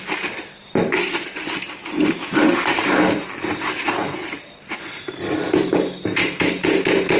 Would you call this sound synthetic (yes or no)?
no